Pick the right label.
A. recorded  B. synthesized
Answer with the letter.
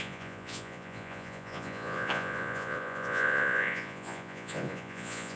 B